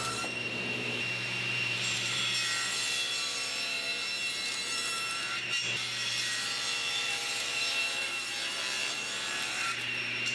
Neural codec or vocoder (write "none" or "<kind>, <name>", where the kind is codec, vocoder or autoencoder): vocoder, BigVGAN v2